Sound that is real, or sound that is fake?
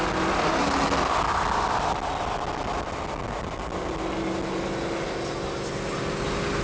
real